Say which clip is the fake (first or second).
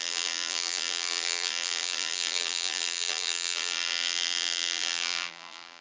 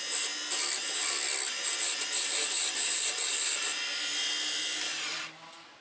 first